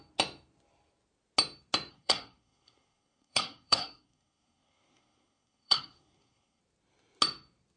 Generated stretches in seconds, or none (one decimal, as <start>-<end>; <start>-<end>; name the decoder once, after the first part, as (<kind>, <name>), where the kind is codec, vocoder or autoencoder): 1.9-6.6 (codec, SNAC)